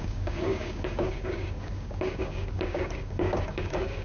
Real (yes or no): no